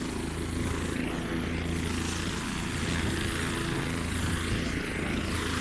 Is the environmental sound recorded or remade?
recorded